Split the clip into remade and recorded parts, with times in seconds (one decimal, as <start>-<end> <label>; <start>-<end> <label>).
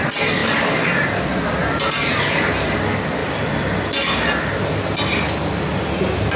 0.0-6.4 recorded